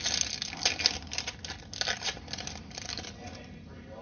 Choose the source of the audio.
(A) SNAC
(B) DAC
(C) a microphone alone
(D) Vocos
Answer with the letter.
C